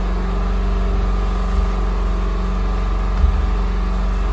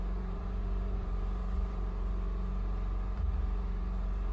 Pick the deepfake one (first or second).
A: second